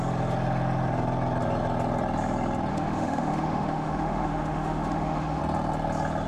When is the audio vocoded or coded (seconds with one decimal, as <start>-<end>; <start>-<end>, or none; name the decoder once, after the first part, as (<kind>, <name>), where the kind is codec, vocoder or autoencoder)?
2.7-5.4 (autoencoder, DAC-VAE)

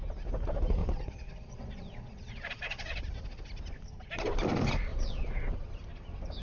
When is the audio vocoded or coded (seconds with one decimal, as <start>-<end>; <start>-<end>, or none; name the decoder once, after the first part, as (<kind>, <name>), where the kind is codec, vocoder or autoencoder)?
0.8-3.0 (vocoder, Vocos); 4.9-5.5

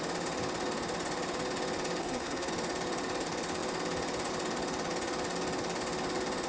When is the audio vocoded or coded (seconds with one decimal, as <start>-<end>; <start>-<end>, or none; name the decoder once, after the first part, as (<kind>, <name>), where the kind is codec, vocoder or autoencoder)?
2.0-2.5 (codec, SNAC)